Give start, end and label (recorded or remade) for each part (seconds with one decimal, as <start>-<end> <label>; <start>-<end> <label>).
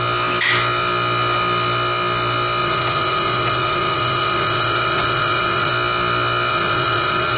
0.0-2.6 recorded; 2.6-5.7 remade; 5.7-6.5 recorded; 6.5-7.4 remade